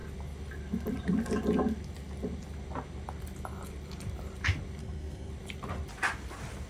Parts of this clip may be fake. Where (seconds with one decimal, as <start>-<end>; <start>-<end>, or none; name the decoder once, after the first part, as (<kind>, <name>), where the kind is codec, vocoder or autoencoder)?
4.8-5.3 (codec, SNAC)